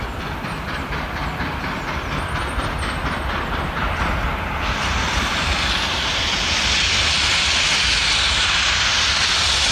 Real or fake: real